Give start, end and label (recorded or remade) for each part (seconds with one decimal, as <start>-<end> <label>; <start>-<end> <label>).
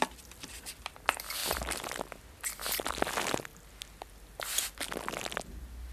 0.0-5.9 recorded